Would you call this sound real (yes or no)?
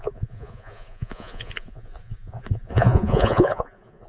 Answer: no